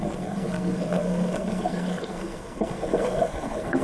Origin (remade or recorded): remade